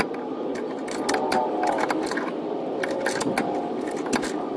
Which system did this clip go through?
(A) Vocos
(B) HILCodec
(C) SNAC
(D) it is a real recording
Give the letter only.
D